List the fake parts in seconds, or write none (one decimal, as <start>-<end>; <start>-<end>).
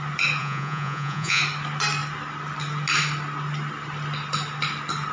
0.4-1.4